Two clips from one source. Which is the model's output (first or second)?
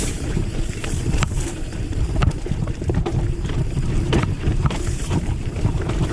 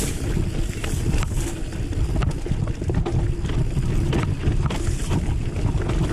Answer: first